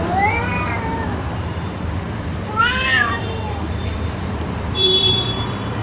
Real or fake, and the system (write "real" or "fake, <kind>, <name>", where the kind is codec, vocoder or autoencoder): fake, vocoder, BigVGAN v2